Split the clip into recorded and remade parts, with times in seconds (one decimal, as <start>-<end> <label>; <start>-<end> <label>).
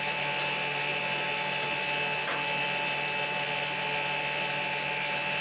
0.0-5.4 recorded